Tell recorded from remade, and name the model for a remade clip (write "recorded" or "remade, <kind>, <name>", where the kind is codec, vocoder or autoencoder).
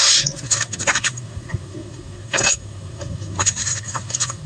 remade, codec, SNAC